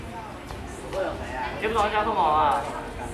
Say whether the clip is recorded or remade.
recorded